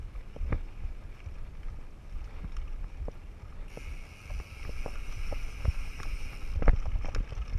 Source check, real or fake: real